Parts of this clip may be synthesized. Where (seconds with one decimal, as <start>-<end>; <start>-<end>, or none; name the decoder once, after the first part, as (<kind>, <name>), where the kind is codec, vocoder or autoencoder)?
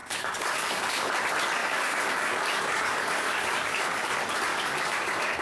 0.0-1.1 (codec, DAC); 1.6-4.1; 4.5-5.4